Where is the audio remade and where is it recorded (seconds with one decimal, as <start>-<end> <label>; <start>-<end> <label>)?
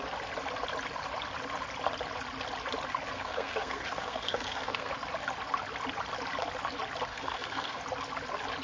0.0-3.1 recorded; 3.1-4.9 remade; 4.9-7.1 recorded; 7.1-7.8 remade; 7.8-8.6 recorded